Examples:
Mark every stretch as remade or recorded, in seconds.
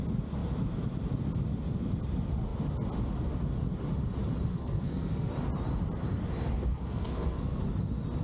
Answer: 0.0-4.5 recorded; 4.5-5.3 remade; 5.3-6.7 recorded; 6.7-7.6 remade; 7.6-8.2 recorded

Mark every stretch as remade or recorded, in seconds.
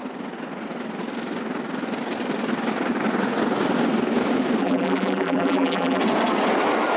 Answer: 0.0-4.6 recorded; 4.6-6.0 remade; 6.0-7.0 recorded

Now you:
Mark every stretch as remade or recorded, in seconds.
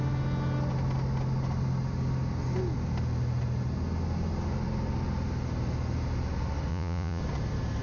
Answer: 0.0-6.7 recorded; 6.7-7.2 remade; 7.2-7.8 recorded